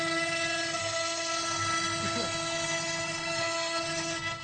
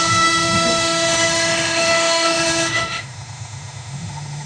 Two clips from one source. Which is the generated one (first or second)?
second